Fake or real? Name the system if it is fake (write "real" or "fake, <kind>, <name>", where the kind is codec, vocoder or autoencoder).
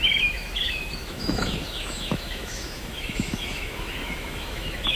fake, autoencoder, DAC-VAE